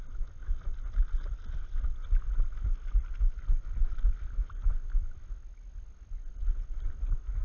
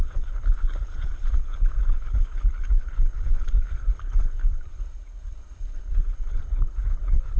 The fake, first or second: second